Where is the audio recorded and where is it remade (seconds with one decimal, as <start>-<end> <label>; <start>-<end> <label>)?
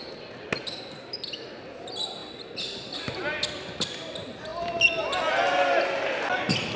0.0-6.8 recorded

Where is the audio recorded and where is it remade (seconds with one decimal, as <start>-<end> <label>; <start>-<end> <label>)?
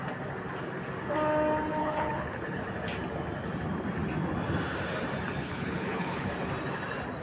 0.0-1.8 recorded; 1.8-2.6 remade; 2.6-5.4 recorded; 5.4-6.3 remade; 6.3-7.2 recorded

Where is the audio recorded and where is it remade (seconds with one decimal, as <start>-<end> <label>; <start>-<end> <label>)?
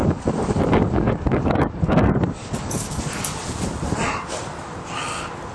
0.0-3.3 remade; 3.3-5.5 recorded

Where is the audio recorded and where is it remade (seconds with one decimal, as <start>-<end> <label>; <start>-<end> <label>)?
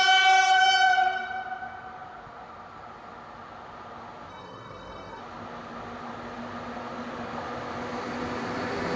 0.0-4.3 recorded; 4.3-5.2 remade; 5.2-9.0 recorded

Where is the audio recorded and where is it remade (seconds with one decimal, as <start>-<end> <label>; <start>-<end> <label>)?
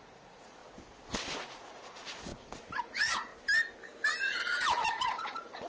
0.0-0.6 remade; 0.6-1.4 recorded; 1.4-2.3 remade; 2.3-2.8 recorded; 2.8-3.3 remade; 3.3-4.2 recorded; 4.2-5.7 remade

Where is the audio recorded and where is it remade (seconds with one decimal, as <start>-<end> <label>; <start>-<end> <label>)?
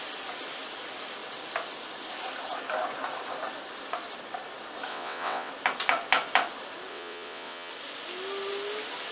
0.0-4.9 recorded; 4.9-5.5 remade; 5.5-6.9 recorded; 6.9-7.7 remade; 7.7-9.1 recorded